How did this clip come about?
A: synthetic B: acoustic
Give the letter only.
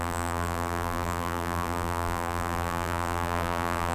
A